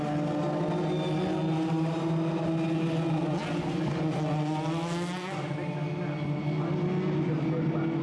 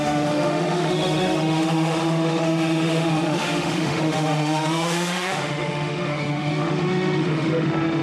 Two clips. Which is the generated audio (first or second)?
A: second